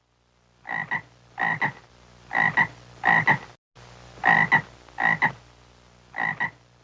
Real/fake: real